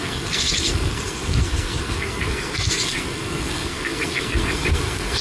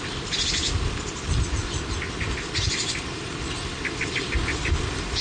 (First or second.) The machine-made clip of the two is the first